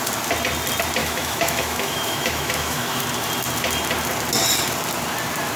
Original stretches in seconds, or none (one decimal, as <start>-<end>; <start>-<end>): 0.0-1.0; 3.0-5.6